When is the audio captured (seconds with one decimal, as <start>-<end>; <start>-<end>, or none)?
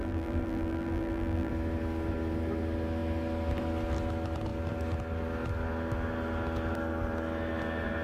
1.5-8.0